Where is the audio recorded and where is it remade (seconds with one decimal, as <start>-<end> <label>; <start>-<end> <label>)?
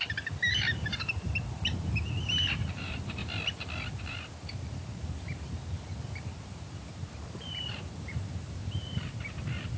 0.0-3.2 remade; 3.2-4.0 recorded; 4.0-9.8 remade